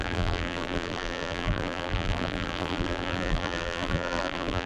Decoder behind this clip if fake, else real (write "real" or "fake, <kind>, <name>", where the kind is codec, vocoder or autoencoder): fake, vocoder, BigVGAN v2